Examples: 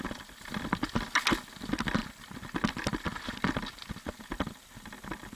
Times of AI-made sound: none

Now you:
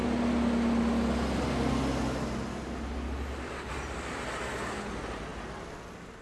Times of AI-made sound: none

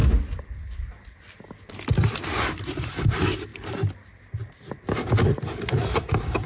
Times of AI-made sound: none

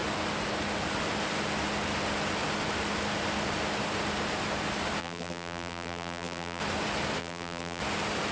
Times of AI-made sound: 5.0-6.6 (vocoder, BigVGAN v2); 7.2-7.8

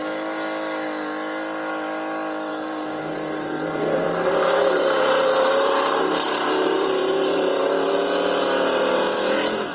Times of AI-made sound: 2.5-7.6 (vocoder, BigVGAN v2)

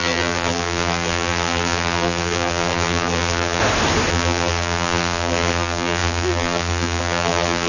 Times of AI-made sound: 0.0-3.6 (vocoder, BigVGAN v2); 4.1-7.7